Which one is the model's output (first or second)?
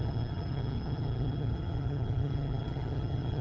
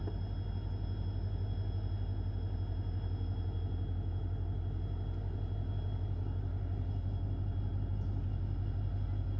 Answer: first